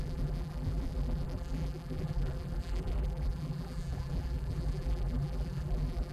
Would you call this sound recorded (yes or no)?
no